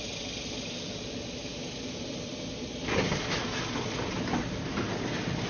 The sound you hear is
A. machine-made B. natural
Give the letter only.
B